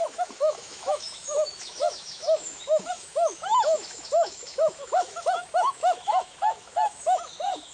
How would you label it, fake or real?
fake